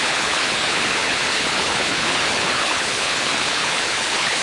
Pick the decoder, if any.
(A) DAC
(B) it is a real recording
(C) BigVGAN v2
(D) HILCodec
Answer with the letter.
D